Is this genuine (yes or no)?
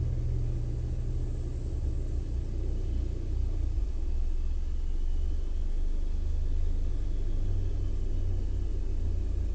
yes